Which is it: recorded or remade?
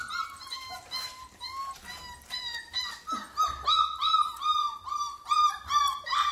recorded